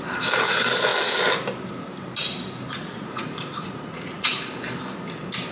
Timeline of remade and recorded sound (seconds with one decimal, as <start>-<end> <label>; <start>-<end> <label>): 0.0-2.7 recorded; 2.7-4.3 remade; 4.3-5.5 recorded